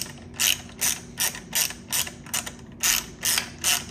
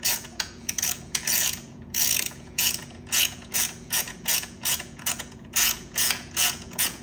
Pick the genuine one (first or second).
first